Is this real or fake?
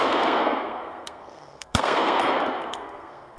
fake